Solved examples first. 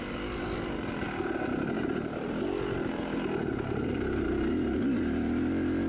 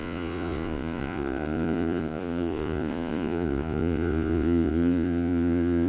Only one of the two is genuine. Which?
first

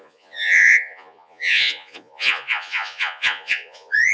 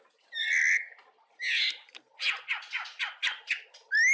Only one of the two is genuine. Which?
second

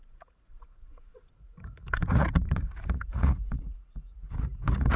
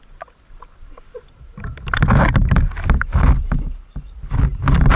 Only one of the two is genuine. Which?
second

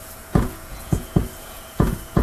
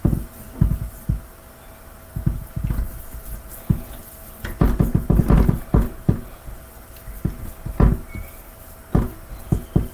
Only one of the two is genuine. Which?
second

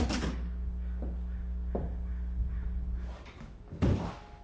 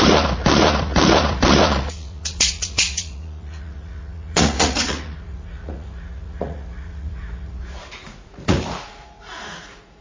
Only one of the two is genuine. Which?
first